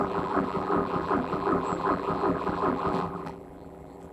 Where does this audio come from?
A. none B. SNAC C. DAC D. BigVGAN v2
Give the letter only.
D